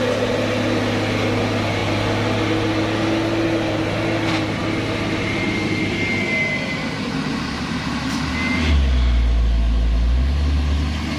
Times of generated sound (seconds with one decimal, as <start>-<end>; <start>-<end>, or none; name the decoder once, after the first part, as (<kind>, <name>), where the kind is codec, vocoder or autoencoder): none